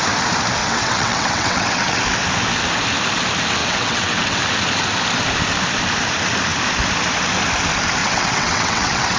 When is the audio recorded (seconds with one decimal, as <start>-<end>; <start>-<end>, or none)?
0.0-0.6; 2.0-3.6; 4.4-8.0